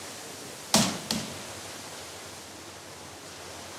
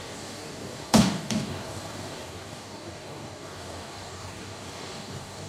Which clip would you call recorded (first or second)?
first